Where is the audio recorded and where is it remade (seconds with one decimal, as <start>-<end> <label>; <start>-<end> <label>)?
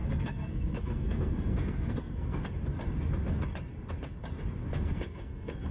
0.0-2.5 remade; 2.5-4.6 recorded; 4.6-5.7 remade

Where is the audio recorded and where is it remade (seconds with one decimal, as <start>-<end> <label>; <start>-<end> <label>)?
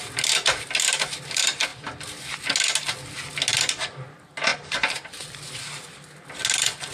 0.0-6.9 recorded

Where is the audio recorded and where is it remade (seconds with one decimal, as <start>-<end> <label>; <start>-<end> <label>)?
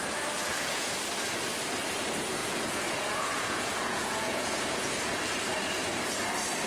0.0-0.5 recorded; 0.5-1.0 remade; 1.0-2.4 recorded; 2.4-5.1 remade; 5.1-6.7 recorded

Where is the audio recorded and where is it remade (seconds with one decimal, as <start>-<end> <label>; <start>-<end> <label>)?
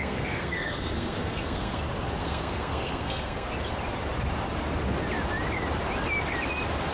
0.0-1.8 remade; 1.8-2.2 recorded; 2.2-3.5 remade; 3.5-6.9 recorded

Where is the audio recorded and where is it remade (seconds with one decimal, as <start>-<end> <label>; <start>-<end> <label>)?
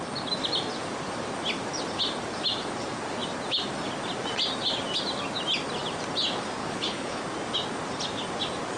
0.0-6.6 recorded; 6.6-7.2 remade; 7.2-8.8 recorded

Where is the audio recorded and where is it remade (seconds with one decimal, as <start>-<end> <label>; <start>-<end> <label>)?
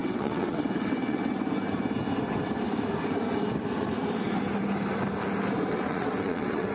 0.0-1.4 remade; 1.4-5.7 recorded; 5.7-6.7 remade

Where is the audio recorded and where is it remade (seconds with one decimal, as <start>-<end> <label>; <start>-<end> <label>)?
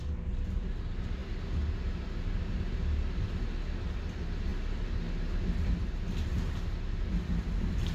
0.0-7.9 recorded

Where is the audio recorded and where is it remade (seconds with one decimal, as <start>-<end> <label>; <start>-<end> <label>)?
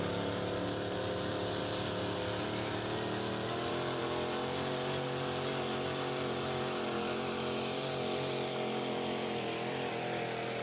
0.0-10.6 recorded